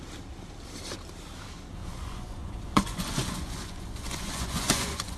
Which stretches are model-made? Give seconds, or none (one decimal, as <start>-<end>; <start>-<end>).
1.8-5.2